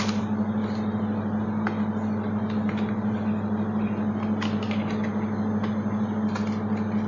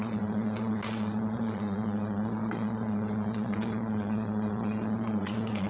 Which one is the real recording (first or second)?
first